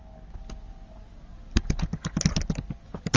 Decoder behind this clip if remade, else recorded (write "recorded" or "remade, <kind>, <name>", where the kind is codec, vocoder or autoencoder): recorded